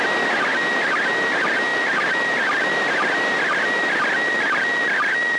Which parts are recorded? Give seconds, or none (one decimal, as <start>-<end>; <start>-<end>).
0.0-5.4